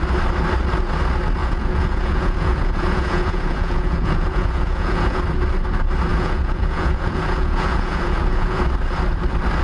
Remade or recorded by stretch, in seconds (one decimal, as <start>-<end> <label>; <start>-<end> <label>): 0.0-1.4 recorded; 1.4-5.2 remade; 5.2-6.1 recorded; 6.1-8.6 remade; 8.6-9.6 recorded